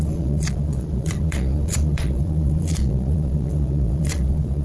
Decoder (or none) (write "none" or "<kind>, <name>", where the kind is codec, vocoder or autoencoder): vocoder, Vocos